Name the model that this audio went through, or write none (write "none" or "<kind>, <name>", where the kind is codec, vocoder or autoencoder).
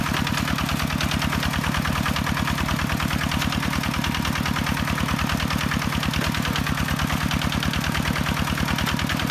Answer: none